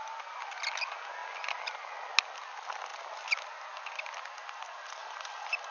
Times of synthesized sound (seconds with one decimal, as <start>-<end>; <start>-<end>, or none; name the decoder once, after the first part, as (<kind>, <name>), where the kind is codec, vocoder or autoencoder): none